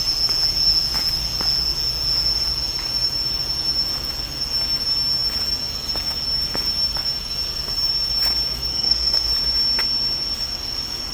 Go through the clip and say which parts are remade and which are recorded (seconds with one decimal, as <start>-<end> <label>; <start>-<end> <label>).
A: 0.0-8.7 recorded; 8.7-9.3 remade; 9.3-11.1 recorded